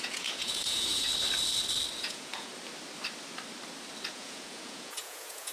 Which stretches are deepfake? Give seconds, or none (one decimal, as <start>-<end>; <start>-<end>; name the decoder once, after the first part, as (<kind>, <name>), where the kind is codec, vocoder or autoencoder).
0.0-1.1 (vocoder, Vocos); 2.0-2.5; 4.1-5.5